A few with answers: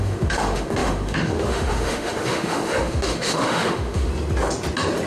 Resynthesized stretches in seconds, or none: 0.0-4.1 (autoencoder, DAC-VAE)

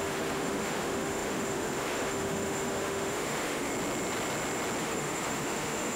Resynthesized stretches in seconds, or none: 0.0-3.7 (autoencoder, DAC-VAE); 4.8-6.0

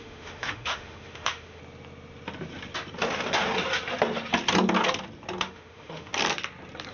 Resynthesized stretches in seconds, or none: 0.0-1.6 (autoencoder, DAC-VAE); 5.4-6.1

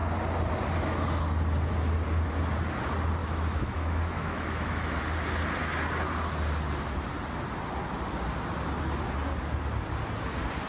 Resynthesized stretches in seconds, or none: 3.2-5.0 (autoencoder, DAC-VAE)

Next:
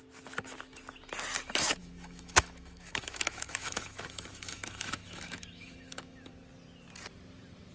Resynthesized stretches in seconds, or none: 1.8-6.3 (autoencoder, DAC-VAE)

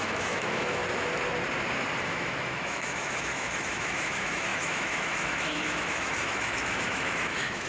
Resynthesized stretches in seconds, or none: 0.0-0.8 (autoencoder, DAC-VAE); 2.0-7.7

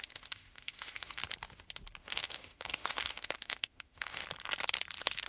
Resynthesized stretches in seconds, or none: 0.0-1.2 (autoencoder, DAC-VAE); 2.0-4.2

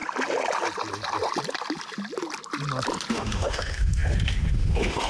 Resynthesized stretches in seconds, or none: 3.1-5.1 (autoencoder, DAC-VAE)